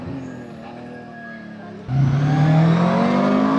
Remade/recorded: recorded